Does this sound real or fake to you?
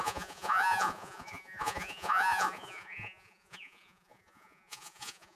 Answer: fake